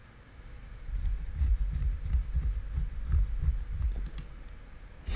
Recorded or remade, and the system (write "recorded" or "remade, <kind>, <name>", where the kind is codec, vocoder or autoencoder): recorded